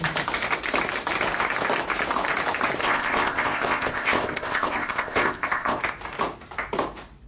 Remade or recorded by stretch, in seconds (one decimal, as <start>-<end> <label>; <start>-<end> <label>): 0.0-2.8 recorded; 2.8-5.8 remade; 5.8-7.3 recorded